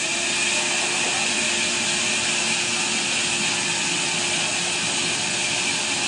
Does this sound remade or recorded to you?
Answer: recorded